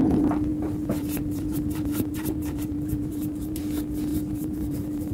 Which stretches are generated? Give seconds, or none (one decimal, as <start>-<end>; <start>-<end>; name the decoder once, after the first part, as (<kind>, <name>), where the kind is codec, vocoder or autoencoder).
0.5-3.6 (vocoder, BigVGAN v2); 4.1-5.1

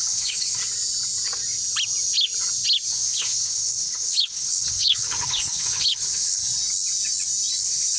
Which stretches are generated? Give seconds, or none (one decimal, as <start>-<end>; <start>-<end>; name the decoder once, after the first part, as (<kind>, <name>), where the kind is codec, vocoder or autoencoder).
0.0-0.6 (codec, HILCodec); 2.9-6.4; 7.6-8.0

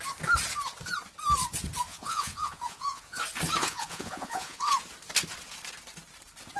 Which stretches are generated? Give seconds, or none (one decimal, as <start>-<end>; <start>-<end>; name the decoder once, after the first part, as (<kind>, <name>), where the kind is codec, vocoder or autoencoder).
1.9-3.2 (vocoder, Vocos); 3.6-4.7

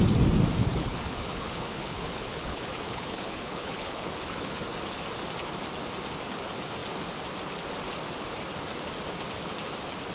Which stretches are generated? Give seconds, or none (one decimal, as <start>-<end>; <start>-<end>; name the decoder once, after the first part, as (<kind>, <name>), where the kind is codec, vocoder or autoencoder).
0.6-4.6 (codec, HILCodec)

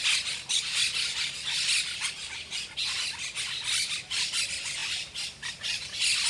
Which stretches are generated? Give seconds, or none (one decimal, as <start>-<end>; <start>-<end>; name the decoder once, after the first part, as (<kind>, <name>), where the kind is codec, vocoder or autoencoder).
none